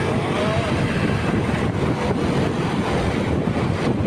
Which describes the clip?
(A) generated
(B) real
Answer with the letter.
A